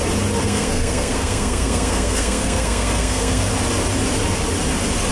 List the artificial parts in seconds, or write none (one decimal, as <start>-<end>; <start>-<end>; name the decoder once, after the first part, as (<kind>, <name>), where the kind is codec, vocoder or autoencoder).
0.4-3.5 (codec, SNAC)